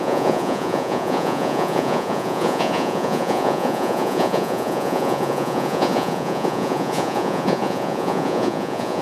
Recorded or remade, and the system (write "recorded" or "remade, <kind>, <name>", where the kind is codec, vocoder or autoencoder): remade, vocoder, Vocos